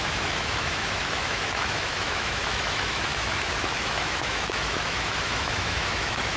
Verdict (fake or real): fake